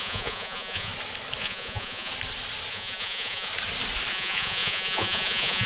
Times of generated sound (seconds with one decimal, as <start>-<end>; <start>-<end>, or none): 0.0-0.9; 1.4-2.1; 2.7-3.5; 4.1-5.7